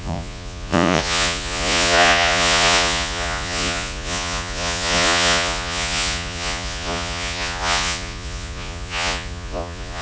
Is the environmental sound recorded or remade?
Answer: remade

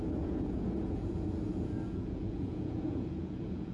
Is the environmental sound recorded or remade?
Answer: remade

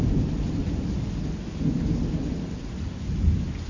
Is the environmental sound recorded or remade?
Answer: recorded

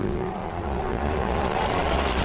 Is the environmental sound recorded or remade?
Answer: remade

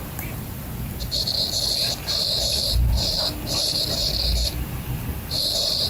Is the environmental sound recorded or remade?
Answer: recorded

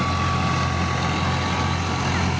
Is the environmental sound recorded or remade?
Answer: recorded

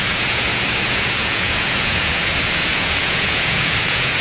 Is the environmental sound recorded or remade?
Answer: remade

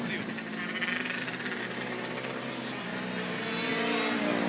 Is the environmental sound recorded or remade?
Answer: recorded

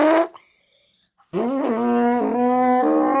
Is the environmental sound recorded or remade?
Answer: recorded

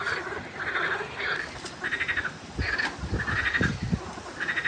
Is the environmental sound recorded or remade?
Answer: recorded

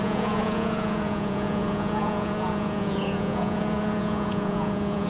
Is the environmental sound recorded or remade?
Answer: remade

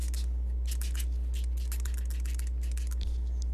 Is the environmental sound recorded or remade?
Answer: recorded